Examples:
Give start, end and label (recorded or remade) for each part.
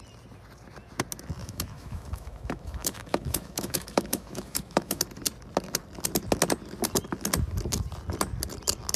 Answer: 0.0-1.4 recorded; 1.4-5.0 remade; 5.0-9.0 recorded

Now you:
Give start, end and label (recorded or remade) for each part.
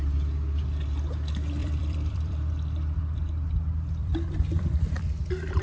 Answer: 0.0-1.6 recorded; 1.6-2.5 remade; 2.5-4.0 recorded; 4.0-5.0 remade; 5.0-5.6 recorded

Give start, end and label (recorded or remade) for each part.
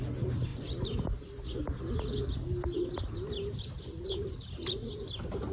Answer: 0.0-5.5 recorded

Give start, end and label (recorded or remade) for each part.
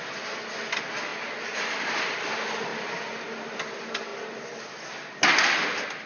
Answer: 0.0-6.1 recorded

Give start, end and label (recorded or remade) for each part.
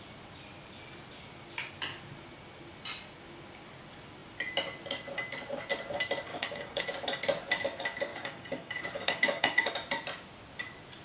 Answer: 0.0-6.3 recorded; 6.3-6.8 remade; 6.8-8.1 recorded; 8.1-9.7 remade; 9.7-11.0 recorded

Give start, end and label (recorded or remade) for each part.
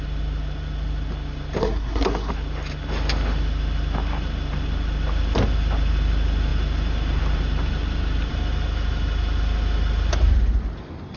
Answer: 0.0-1.6 recorded; 1.6-2.3 remade; 2.3-11.2 recorded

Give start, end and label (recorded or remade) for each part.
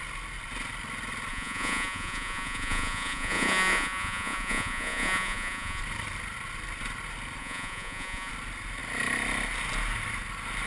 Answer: 0.0-1.3 recorded; 1.3-5.8 remade; 5.8-7.4 recorded; 7.4-8.3 remade; 8.3-10.7 recorded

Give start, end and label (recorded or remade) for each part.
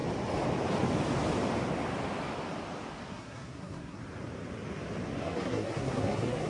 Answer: 0.0-3.1 recorded; 3.1-4.0 remade; 4.0-5.2 recorded; 5.2-6.5 remade